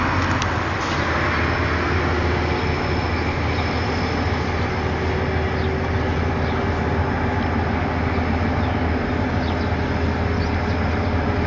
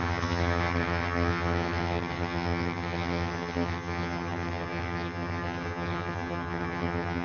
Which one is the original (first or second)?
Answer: first